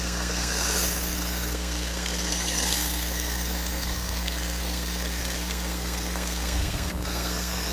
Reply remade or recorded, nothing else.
remade